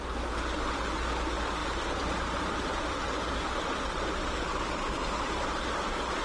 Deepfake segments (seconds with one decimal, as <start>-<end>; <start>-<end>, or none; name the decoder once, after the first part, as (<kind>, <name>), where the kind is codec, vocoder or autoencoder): none